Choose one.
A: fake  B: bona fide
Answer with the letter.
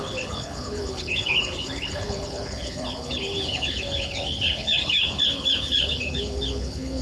A